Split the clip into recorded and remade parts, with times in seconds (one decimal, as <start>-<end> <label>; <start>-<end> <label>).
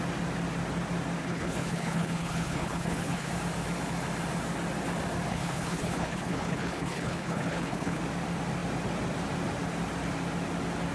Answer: 0.0-1.2 recorded; 1.2-3.3 remade; 3.3-5.3 recorded; 5.3-8.0 remade; 8.0-10.9 recorded